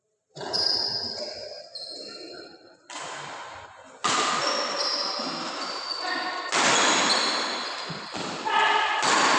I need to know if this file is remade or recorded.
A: recorded